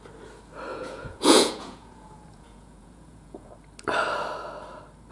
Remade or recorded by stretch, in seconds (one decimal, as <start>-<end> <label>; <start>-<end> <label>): 0.0-0.7 recorded; 0.7-3.5 remade; 3.5-5.1 recorded